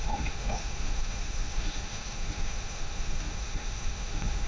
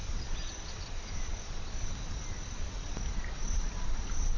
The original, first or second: second